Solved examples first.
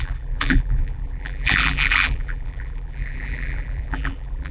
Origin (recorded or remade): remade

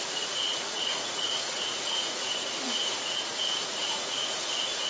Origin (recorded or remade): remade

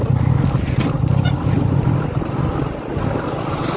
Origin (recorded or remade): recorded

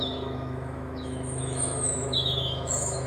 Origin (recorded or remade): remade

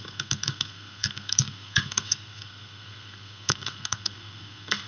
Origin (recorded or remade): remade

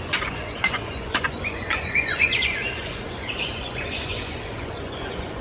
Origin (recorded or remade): remade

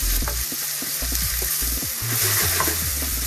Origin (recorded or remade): recorded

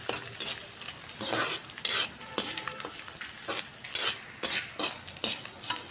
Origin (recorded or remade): recorded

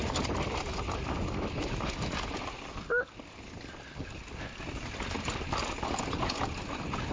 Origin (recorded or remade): recorded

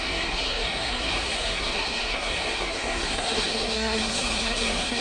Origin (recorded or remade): remade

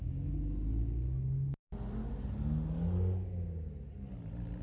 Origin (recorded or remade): recorded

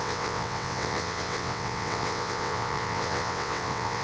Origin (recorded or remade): remade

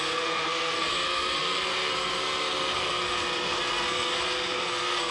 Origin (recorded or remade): remade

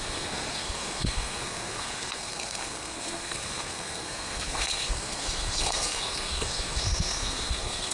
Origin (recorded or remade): remade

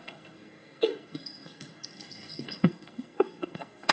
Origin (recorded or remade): remade